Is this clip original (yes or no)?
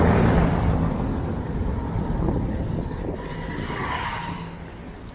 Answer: yes